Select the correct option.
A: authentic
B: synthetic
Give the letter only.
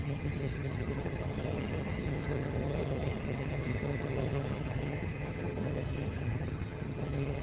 B